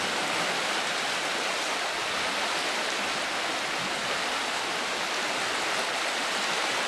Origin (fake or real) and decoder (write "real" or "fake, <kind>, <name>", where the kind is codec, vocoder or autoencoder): real